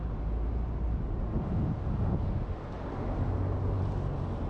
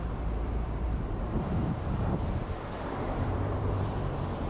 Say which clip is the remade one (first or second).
second